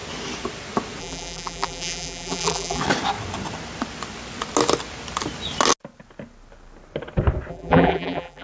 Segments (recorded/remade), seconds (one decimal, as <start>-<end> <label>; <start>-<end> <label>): 0.0-1.0 recorded; 1.0-2.8 remade; 2.8-7.5 recorded; 7.5-8.4 remade

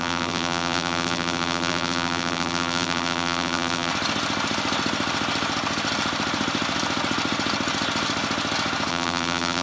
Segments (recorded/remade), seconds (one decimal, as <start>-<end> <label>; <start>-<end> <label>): 0.0-3.9 remade; 3.9-8.9 recorded; 8.9-9.6 remade

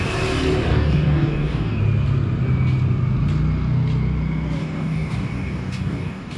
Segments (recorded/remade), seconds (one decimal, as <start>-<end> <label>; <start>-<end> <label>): 0.0-0.7 recorded; 0.7-1.8 remade; 1.8-4.6 recorded; 4.6-6.4 remade

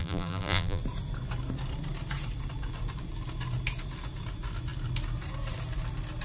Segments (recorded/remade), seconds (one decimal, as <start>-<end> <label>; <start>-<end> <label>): 0.0-0.8 remade; 0.8-6.2 recorded

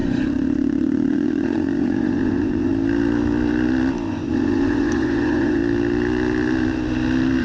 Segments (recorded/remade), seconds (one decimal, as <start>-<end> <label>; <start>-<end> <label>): 0.0-2.7 remade; 2.7-4.1 recorded; 4.1-5.6 remade; 5.6-7.4 recorded